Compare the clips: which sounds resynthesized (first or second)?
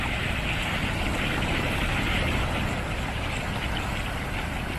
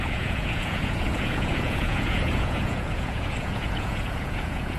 second